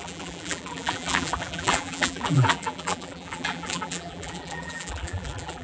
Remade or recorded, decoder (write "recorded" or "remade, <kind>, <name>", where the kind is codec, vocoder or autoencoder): remade, vocoder, BigVGAN v2